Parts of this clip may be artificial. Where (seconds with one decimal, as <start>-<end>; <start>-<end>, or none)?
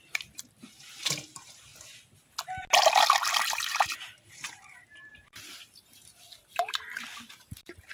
0.0-1.7; 3.3-6.1; 7.4-7.9